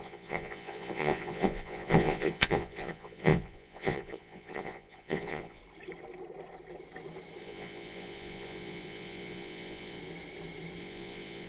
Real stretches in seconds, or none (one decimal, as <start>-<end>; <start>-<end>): 5.6-7.4; 10.0-10.8

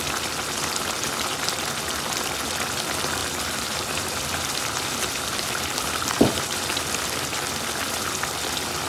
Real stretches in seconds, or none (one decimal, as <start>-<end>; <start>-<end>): 0.0-3.2; 6.9-8.9